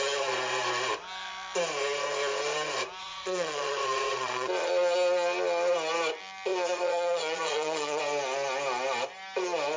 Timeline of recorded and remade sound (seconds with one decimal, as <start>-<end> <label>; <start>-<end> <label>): 0.0-3.0 recorded; 3.0-4.7 remade; 4.7-6.5 recorded; 6.5-8.0 remade; 8.0-9.8 recorded